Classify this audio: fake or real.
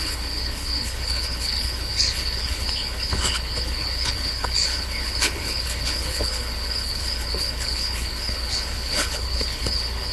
fake